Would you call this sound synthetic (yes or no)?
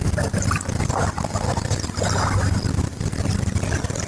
no